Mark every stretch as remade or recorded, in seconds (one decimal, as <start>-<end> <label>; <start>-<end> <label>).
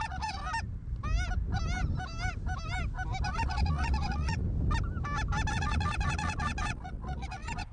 0.0-0.4 remade; 0.4-3.3 recorded; 3.3-4.4 remade; 4.4-5.5 recorded; 5.5-7.7 remade